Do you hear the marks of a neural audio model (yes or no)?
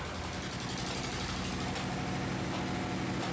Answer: no